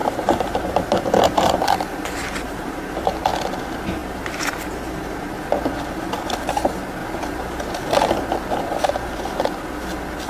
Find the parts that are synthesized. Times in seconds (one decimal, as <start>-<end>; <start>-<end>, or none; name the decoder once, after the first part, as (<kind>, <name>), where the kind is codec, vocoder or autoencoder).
0.0-3.3 (vocoder, BigVGAN v2); 4.0-5.3